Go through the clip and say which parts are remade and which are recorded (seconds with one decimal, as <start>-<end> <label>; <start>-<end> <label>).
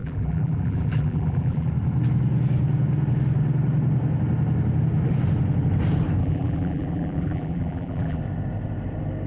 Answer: 0.0-1.7 remade; 1.7-6.2 recorded; 6.2-8.2 remade; 8.2-9.3 recorded